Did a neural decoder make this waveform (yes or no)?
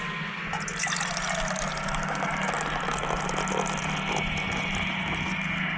no